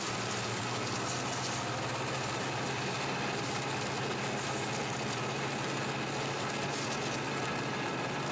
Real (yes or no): yes